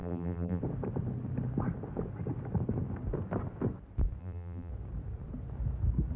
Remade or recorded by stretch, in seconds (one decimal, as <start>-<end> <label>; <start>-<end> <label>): 0.0-0.6 remade; 0.6-4.2 recorded; 4.2-4.7 remade; 4.7-6.2 recorded